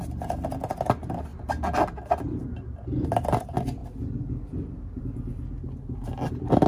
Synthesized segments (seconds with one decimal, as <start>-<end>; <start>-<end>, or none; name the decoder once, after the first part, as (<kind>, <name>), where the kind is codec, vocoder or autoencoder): none